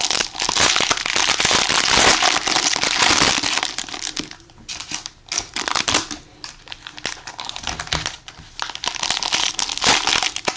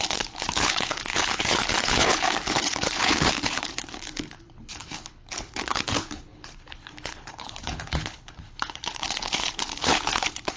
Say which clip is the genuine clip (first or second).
first